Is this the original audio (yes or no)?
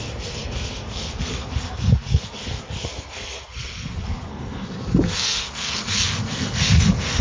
no